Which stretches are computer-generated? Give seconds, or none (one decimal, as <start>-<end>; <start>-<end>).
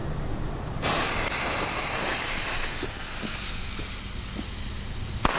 none